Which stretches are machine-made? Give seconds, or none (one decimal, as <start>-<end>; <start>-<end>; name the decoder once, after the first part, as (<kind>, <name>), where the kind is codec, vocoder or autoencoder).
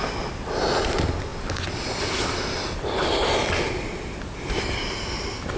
none